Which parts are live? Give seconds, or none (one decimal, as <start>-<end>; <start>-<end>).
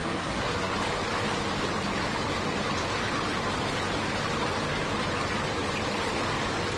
0.7-6.8